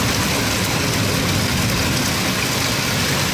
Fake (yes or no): no